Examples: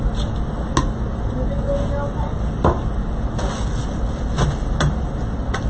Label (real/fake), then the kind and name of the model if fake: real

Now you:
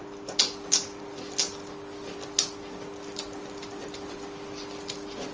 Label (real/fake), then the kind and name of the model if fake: real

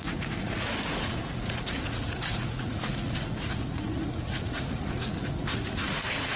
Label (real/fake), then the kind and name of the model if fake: fake, vocoder, Vocos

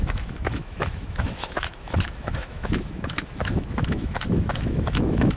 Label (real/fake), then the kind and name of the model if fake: fake, autoencoder, DAC-VAE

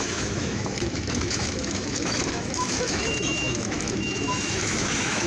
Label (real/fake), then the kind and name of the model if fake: fake, autoencoder, DAC-VAE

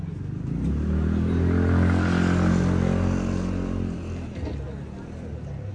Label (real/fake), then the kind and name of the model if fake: real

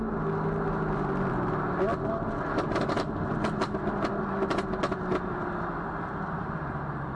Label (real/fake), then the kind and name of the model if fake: real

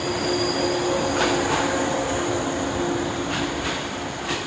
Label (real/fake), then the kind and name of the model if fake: fake, vocoder, BigVGAN v2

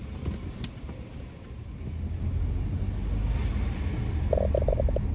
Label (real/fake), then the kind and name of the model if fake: real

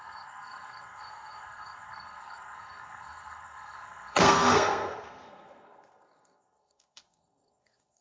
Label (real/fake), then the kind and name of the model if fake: fake, codec, SNAC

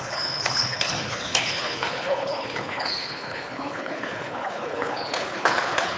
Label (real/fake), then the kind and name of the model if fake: fake, codec, HILCodec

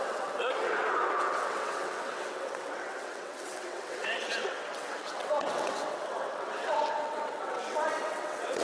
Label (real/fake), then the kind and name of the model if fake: fake, vocoder, WaveNeXt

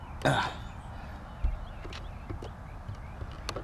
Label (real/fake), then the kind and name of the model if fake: real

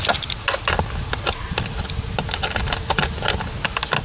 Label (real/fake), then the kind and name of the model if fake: real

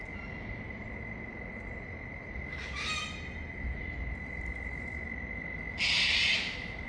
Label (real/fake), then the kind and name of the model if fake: real